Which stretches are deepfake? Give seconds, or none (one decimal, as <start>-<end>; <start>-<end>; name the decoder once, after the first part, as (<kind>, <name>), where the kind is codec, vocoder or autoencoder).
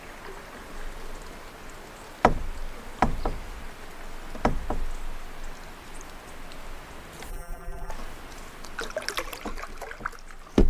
7.3-7.9 (vocoder, BigVGAN v2)